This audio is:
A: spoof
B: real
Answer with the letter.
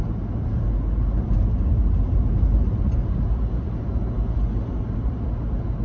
B